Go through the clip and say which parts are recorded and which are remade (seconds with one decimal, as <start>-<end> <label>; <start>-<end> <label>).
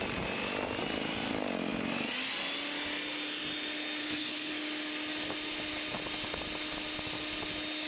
0.0-4.0 recorded; 4.0-4.5 remade; 4.5-7.9 recorded